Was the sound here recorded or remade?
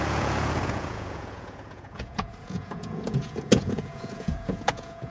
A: remade